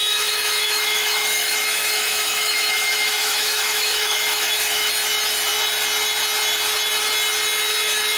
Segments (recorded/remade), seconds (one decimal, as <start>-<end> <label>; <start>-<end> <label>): 0.0-4.9 remade; 4.9-8.2 recorded